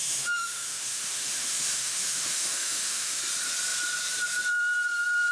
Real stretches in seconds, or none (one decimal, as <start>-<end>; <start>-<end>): 3.2-5.3